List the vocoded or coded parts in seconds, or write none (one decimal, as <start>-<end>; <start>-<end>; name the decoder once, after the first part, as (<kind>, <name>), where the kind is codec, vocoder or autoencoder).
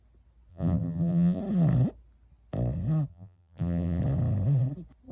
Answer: 0.5-1.4 (vocoder, BigVGAN v2); 3.1-4.0